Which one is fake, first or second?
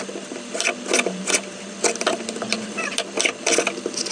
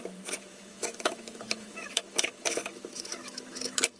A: second